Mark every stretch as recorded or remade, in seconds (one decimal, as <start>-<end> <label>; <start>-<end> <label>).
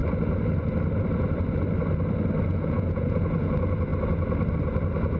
0.0-2.5 recorded; 2.5-3.3 remade; 3.3-5.2 recorded